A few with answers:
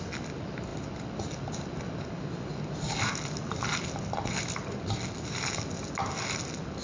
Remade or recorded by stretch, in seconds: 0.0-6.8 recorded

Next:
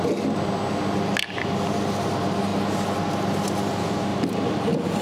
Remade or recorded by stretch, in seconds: 0.0-4.1 recorded; 4.1-5.0 remade

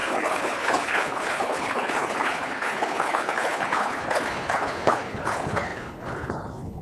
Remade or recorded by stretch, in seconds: 0.0-6.8 remade

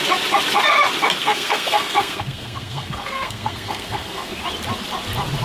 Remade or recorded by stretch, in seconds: 0.0-1.2 recorded; 1.2-4.4 remade; 4.4-5.4 recorded

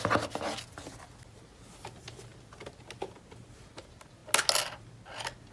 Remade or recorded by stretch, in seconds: 0.0-5.5 recorded

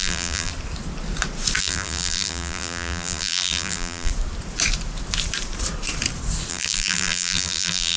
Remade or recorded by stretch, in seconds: 0.0-0.5 remade; 0.5-1.6 recorded; 1.6-4.1 remade; 4.1-6.5 recorded; 6.5-8.0 remade